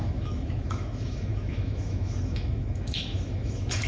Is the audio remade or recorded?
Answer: remade